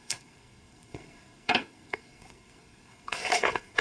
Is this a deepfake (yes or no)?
yes